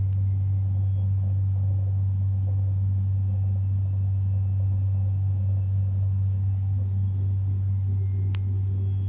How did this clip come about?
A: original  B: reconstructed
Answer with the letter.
A